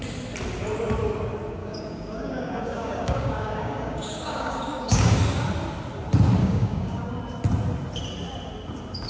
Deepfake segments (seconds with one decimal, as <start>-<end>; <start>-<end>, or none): 1.6-5.2; 6.4-7.2